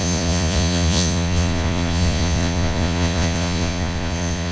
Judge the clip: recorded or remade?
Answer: remade